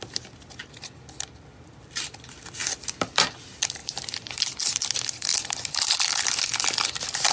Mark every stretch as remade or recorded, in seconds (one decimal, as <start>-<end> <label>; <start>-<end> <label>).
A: 0.0-3.8 recorded; 3.8-4.4 remade; 4.4-7.3 recorded